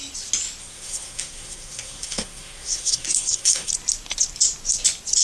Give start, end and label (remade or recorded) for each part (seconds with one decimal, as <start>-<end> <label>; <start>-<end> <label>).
0.0-0.6 recorded; 0.6-3.7 remade; 3.7-5.2 recorded